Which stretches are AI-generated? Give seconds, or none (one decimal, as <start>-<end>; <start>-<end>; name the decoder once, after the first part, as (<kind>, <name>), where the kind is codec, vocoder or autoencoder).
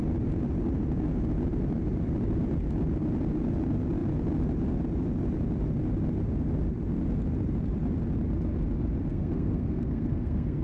9.1-10.6 (codec, SNAC)